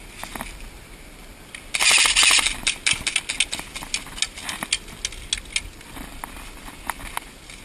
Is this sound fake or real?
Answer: real